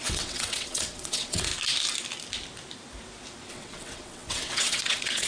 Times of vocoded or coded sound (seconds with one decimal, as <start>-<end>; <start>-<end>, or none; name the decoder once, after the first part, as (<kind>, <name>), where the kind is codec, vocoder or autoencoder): 0.0-1.5 (vocoder, WaveNeXt); 3.5-5.3